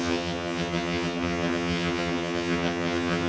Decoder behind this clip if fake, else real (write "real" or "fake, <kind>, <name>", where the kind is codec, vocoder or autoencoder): fake, vocoder, HiFi-GAN